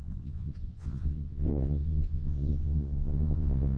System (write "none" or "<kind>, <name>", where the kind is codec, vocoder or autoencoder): vocoder, Vocos